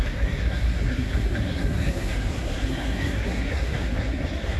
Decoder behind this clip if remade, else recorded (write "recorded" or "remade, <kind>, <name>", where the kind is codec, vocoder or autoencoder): remade, codec, SNAC